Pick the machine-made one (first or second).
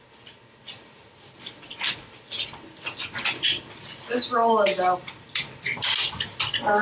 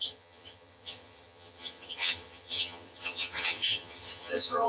second